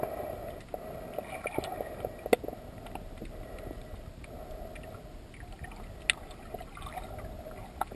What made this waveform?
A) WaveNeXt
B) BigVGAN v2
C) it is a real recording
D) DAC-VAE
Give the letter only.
C